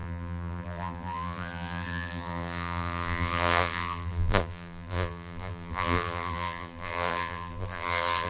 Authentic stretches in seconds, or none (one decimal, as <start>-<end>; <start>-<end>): none